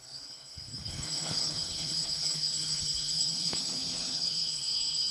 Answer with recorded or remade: remade